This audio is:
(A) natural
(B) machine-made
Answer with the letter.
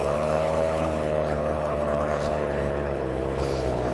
B